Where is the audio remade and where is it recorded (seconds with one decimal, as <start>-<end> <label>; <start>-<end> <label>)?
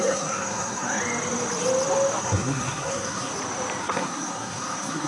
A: 0.0-1.0 remade; 1.0-2.2 recorded; 2.2-3.3 remade; 3.3-3.8 recorded; 3.8-5.1 remade